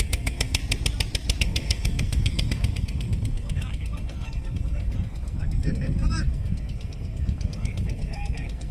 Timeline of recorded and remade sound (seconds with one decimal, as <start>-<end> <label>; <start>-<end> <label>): 0.0-0.6 remade; 0.6-1.4 recorded; 1.4-8.7 remade